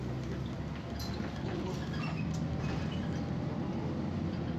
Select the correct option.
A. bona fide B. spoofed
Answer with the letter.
A